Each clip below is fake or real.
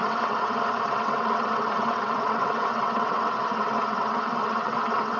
fake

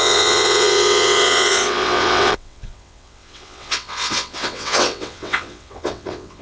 fake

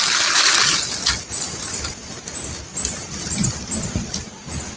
real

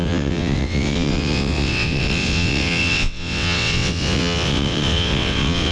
fake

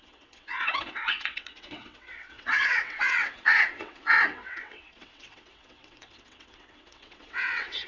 fake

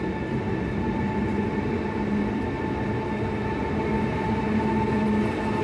real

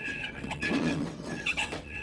fake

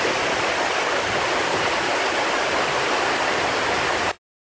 real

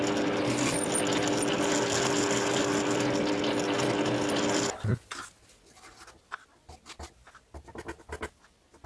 real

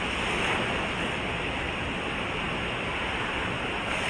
real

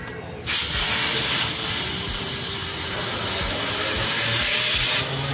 real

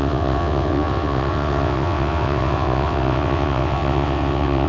fake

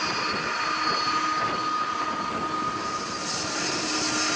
real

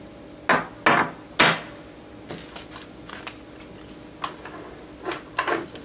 real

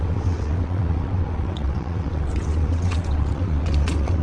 fake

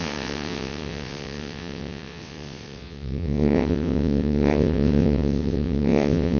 fake